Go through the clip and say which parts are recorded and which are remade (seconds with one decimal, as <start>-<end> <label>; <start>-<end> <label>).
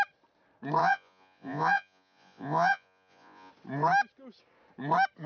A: 0.0-0.8 recorded; 0.8-3.5 remade; 3.5-5.3 recorded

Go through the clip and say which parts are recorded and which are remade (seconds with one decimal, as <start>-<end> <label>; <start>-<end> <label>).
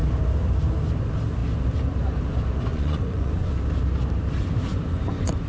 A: 0.0-2.7 recorded; 2.7-3.5 remade; 3.5-4.7 recorded; 4.7-5.5 remade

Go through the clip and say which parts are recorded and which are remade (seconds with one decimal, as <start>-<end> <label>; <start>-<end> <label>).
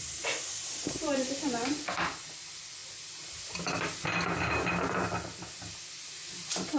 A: 0.0-6.8 recorded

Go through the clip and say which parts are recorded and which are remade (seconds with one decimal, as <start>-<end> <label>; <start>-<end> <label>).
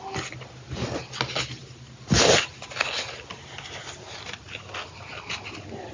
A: 0.0-5.9 recorded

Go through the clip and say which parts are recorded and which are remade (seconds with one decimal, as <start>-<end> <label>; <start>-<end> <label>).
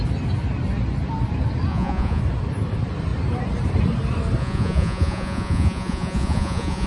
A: 0.0-1.7 recorded; 1.7-2.2 remade; 2.2-4.4 recorded; 4.4-6.9 remade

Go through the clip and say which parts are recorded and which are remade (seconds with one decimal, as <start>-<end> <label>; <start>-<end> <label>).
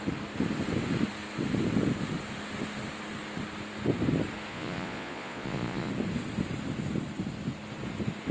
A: 0.0-4.5 recorded; 4.5-5.9 remade; 5.9-8.3 recorded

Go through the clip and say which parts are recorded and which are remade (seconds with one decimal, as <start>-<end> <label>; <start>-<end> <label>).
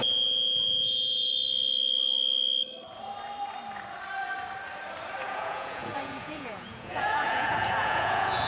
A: 0.0-1.3 remade; 1.3-5.2 recorded; 5.2-8.5 remade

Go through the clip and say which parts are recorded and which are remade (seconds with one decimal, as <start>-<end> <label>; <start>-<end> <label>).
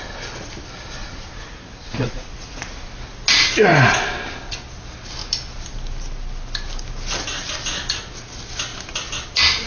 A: 0.0-1.0 recorded; 1.0-2.9 remade; 2.9-9.7 recorded